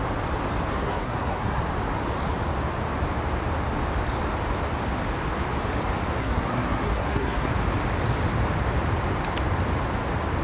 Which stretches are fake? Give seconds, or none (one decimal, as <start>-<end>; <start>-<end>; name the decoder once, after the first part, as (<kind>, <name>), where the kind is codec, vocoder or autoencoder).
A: 0.7-1.6 (codec, SNAC); 6.2-7.5